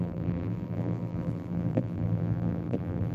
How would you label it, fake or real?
fake